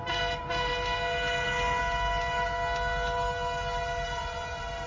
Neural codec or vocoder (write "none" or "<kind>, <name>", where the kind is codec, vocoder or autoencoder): none